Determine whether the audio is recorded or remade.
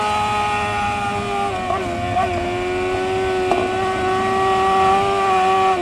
recorded